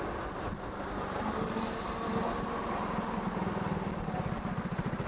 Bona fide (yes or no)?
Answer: yes